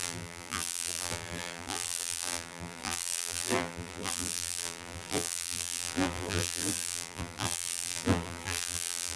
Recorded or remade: remade